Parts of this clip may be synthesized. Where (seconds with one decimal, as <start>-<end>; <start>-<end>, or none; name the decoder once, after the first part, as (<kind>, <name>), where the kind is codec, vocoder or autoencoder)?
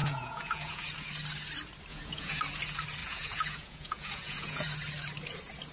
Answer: 0.0-0.8 (vocoder, Vocos); 1.9-2.4; 3.0-4.7